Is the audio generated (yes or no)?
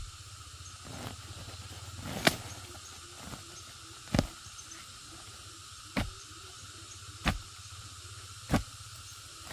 no